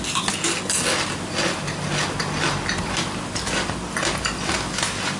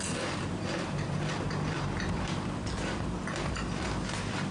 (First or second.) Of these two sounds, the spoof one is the second